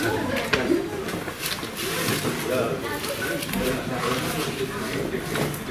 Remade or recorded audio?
recorded